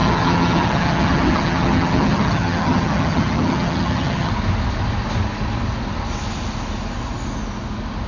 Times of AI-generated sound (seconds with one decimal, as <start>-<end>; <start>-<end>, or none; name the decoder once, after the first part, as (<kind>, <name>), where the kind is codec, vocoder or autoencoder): 0.0-4.3 (vocoder, HiFi-GAN)